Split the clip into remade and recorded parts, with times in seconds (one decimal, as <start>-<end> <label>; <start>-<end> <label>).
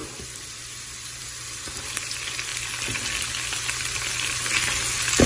0.0-1.2 remade; 1.2-5.3 recorded